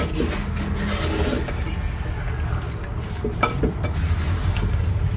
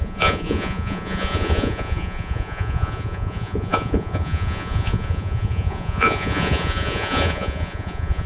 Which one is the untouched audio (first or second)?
first